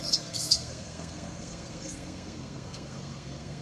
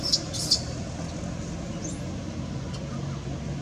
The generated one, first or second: first